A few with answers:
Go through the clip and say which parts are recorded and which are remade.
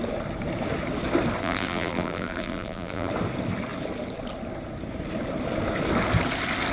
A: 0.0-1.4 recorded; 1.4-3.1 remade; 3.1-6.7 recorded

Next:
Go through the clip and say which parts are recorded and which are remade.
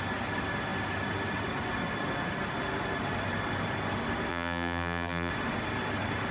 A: 0.0-4.3 recorded; 4.3-5.3 remade; 5.3-6.3 recorded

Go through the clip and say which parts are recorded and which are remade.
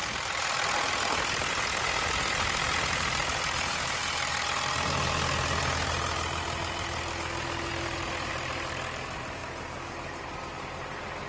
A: 0.0-11.3 recorded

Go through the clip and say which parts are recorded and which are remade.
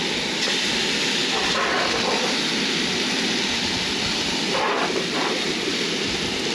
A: 0.0-6.5 recorded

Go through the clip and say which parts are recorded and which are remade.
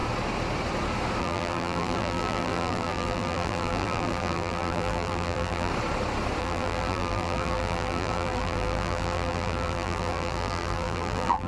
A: 0.0-1.2 recorded; 1.2-5.7 remade; 5.7-6.4 recorded; 6.4-11.5 remade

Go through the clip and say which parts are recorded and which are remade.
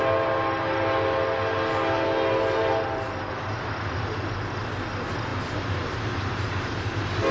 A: 0.0-5.3 recorded; 5.3-7.3 remade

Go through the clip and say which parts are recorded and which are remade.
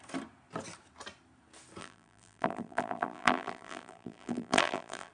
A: 0.0-1.8 recorded; 1.8-5.1 remade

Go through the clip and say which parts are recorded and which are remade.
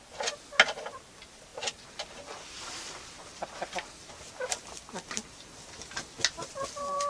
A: 0.0-1.5 recorded; 1.5-5.8 remade; 5.8-7.1 recorded